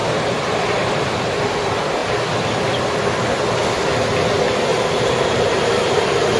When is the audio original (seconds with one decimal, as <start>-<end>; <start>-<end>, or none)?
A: 1.2-4.7; 5.7-6.4